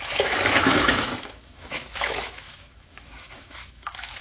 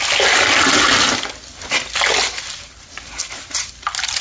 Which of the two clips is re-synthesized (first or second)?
first